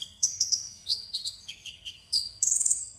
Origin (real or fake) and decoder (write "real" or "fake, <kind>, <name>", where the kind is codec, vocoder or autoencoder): fake, codec, SNAC